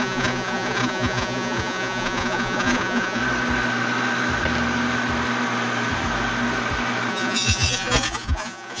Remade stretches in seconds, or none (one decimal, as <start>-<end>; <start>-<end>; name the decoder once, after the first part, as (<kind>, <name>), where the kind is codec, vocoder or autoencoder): 0.0-3.2 (vocoder, Vocos); 7.1-8.8